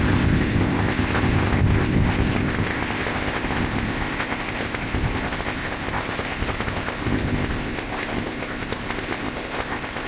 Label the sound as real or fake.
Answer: fake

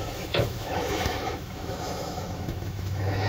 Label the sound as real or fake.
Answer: fake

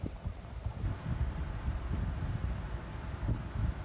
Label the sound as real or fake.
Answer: fake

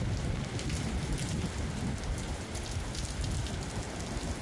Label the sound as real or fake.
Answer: real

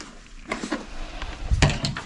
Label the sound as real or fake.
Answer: fake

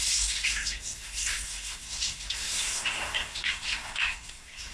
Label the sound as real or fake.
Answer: fake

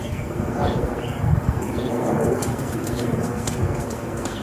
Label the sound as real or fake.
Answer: fake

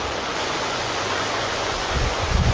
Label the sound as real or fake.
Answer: fake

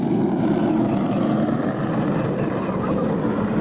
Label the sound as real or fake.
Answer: real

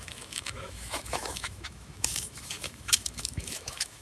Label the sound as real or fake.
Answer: fake